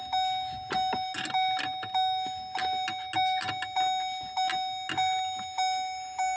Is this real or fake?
real